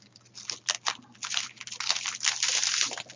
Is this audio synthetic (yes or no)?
no